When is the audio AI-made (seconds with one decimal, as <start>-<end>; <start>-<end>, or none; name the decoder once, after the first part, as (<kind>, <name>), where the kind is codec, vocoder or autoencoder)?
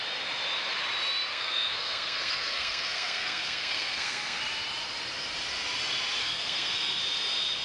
1.3-4.4 (codec, SNAC); 6.2-7.0